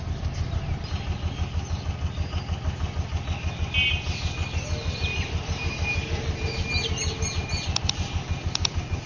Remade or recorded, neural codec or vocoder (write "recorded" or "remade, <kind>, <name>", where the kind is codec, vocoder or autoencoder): recorded